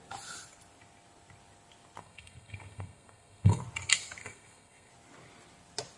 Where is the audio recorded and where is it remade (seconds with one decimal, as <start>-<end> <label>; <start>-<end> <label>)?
0.0-2.0 recorded; 2.0-3.6 remade; 3.6-4.2 recorded; 4.2-4.9 remade; 4.9-6.0 recorded